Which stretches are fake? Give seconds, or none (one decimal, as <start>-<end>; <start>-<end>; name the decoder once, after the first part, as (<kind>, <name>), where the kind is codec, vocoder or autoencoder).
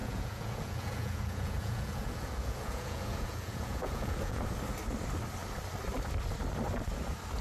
0.0-4.4 (vocoder, Vocos)